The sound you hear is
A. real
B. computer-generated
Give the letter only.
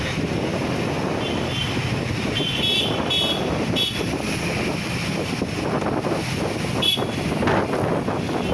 A